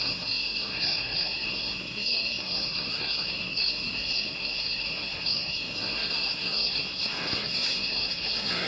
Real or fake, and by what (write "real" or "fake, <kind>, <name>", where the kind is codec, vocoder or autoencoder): fake, codec, SNAC